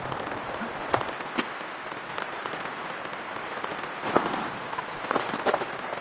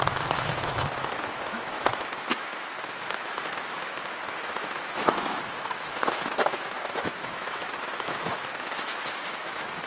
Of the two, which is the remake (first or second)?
second